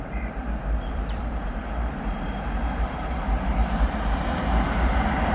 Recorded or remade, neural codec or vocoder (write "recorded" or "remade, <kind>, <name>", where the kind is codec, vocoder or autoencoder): remade, vocoder, BigVGAN v2